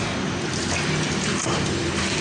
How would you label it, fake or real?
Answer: real